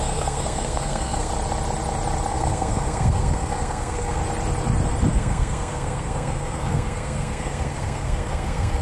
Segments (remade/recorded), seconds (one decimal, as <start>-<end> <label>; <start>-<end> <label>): 0.0-1.3 remade; 1.3-2.3 recorded; 2.3-4.2 remade; 4.2-5.1 recorded; 5.1-8.8 remade